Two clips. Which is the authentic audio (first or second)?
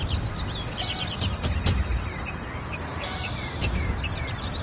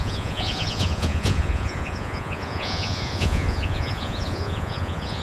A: first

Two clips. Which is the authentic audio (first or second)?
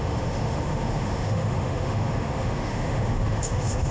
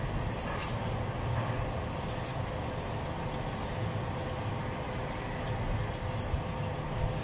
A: second